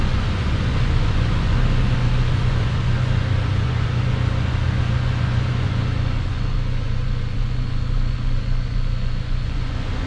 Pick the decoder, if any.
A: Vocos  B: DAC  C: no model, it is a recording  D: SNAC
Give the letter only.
A